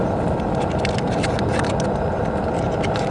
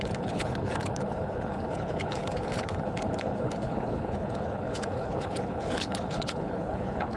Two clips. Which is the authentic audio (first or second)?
first